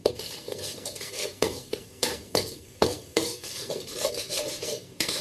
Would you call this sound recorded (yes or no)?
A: no